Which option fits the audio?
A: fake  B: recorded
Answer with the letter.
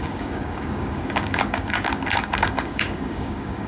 A